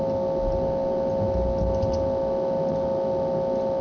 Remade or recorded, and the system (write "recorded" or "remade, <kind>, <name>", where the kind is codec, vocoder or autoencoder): recorded